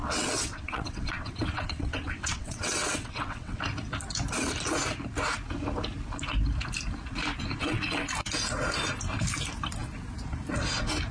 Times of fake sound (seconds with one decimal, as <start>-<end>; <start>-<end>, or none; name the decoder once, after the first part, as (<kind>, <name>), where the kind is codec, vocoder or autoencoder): 0.0-3.6 (vocoder, WaveNeXt); 7.6-8.1